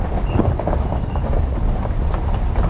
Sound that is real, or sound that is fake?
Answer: real